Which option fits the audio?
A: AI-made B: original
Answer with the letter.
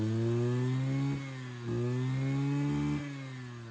B